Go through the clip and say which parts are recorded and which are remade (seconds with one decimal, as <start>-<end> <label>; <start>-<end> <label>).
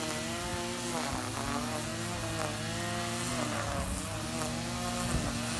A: 0.0-5.6 recorded